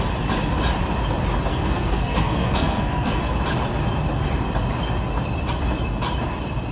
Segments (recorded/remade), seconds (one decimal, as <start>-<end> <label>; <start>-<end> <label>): 0.0-1.5 recorded; 1.5-3.2 remade; 3.2-6.7 recorded